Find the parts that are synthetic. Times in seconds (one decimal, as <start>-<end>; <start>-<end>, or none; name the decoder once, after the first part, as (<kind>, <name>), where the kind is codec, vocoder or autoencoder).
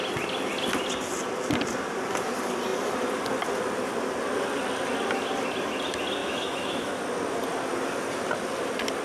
6.2-7.0 (autoencoder, DAC-VAE)